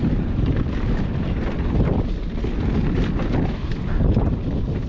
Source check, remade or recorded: recorded